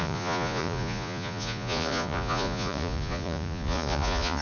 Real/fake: fake